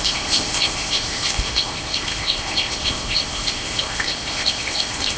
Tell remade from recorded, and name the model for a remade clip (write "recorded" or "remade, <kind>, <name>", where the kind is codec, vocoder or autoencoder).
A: remade, codec, ZipCodec